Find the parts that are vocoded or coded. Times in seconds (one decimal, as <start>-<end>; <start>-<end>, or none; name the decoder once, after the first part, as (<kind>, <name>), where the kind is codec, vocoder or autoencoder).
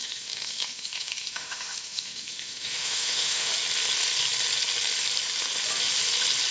0.0-3.5 (autoencoder, DAC-VAE)